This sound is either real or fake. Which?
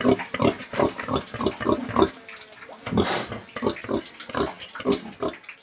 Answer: real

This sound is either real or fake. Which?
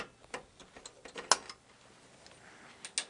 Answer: real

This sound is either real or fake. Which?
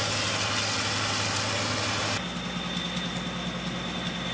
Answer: real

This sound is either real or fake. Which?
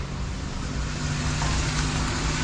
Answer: real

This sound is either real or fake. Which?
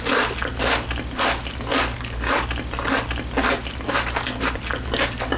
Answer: real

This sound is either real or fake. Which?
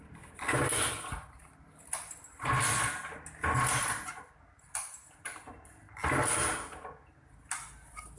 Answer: real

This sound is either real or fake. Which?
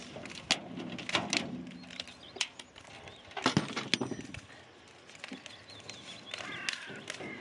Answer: real